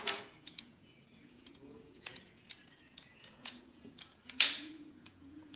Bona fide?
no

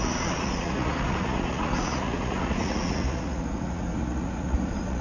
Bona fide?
no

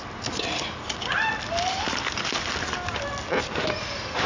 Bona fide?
yes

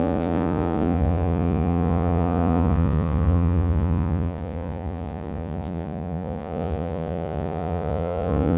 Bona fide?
no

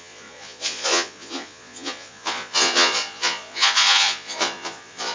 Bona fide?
no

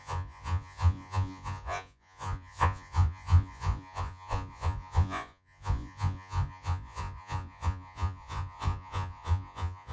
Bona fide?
no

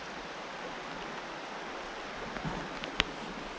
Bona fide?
yes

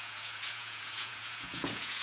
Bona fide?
no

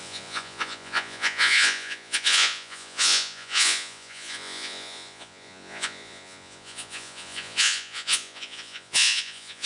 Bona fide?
no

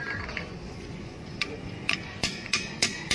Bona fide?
no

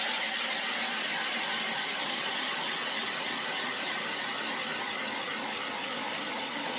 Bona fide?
yes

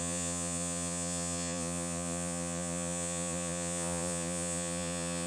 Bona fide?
no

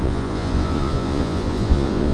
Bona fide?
no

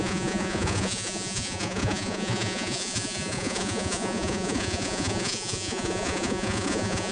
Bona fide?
no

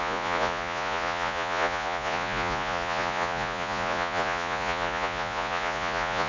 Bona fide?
no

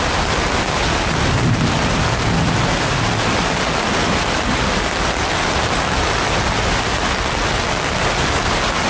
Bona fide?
yes